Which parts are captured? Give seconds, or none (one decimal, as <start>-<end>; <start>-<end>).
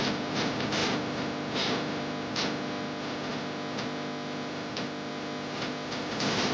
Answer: 0.0-6.5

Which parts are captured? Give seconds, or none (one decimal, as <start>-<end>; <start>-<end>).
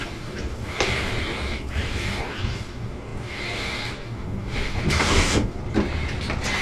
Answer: 5.6-6.6